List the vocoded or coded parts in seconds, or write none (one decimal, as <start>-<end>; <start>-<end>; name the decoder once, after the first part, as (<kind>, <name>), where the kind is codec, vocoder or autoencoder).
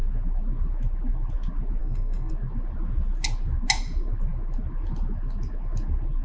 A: 1.8-2.3 (codec, SNAC)